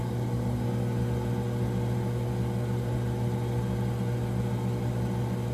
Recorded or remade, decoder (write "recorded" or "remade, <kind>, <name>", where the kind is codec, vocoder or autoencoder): recorded